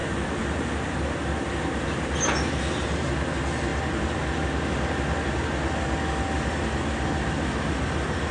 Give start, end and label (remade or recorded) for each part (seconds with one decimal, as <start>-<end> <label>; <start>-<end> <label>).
0.0-2.6 remade; 2.6-3.7 recorded; 3.7-4.2 remade; 4.2-8.3 recorded